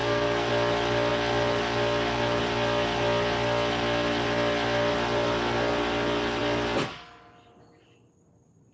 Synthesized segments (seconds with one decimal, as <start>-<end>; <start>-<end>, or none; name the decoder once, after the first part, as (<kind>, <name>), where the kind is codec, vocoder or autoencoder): 0.0-0.5 (codec, SNAC)